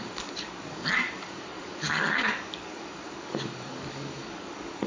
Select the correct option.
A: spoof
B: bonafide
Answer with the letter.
A